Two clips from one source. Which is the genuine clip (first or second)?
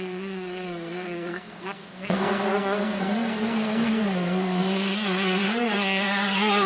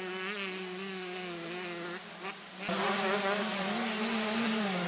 second